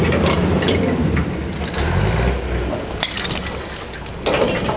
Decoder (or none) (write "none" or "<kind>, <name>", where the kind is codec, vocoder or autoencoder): none